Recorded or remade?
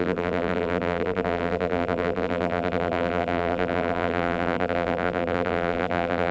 remade